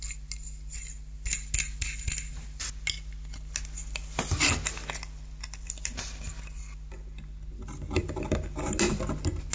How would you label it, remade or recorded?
recorded